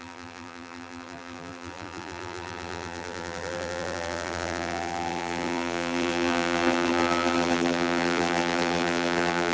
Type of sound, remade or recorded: remade